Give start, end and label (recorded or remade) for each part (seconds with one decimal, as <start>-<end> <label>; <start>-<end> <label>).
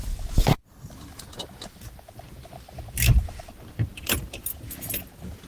0.0-5.5 recorded